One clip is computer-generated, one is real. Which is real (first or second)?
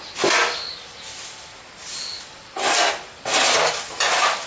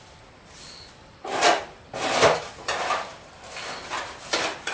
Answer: first